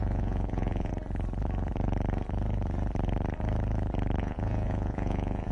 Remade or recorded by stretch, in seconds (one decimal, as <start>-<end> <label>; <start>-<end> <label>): 0.0-0.9 remade; 0.9-4.2 recorded; 4.2-5.5 remade